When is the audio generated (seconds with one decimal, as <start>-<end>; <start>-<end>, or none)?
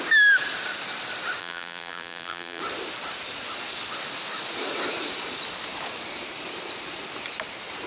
1.4-2.6